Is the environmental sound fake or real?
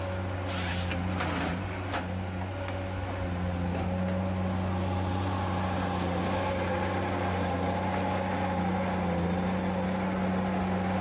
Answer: real